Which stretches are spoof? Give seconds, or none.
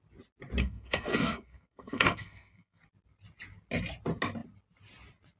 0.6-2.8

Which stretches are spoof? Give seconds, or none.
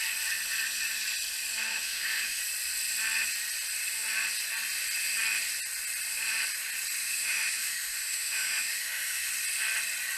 1.7-2.4; 7.0-9.3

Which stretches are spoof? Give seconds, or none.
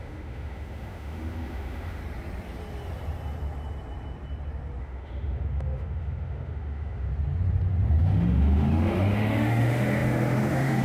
0.0-2.0; 4.8-7.1; 8.0-10.8